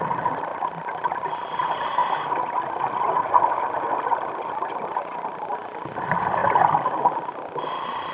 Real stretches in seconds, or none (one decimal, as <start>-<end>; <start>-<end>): 0.5-1.5; 2.0-3.9